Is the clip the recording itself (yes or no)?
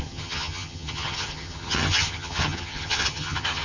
no